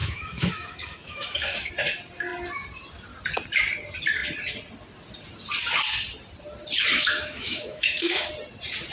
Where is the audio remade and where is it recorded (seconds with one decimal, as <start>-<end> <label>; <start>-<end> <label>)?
0.0-1.7 remade; 1.7-6.9 recorded; 6.9-8.3 remade; 8.3-8.9 recorded